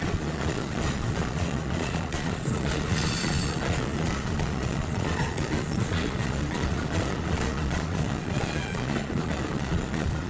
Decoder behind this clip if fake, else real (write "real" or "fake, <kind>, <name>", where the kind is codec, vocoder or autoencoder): fake, vocoder, Vocos